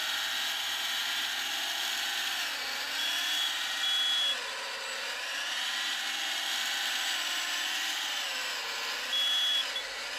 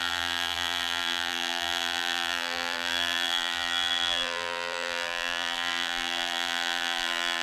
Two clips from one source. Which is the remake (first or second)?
second